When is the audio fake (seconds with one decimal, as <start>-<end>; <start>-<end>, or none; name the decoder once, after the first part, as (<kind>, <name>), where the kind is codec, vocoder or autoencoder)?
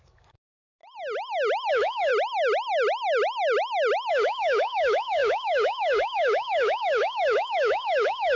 0.0-0.8 (codec, DAC); 1.7-2.1; 4.1-8.4